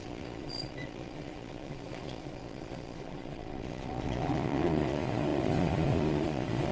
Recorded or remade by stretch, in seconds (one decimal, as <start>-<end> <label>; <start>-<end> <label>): 0.0-6.7 remade